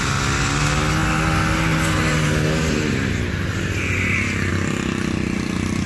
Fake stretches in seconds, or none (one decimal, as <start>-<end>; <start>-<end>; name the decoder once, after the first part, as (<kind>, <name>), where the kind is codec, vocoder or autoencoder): none